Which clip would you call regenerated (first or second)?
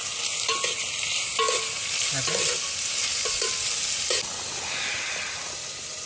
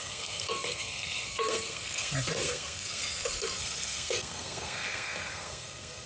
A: second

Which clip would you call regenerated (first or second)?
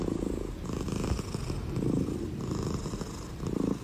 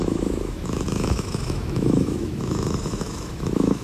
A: second